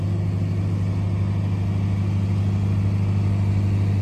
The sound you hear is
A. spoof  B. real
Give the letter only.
B